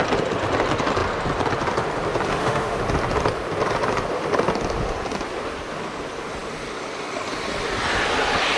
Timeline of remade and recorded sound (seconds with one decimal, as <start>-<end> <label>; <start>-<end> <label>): 0.0-2.3 recorded; 2.3-2.8 remade; 2.8-8.6 recorded